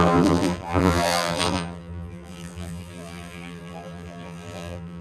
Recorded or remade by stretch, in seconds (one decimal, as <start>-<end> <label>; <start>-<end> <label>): 0.0-5.0 remade